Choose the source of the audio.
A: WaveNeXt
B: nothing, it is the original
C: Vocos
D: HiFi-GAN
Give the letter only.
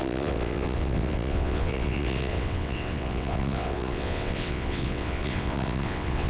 A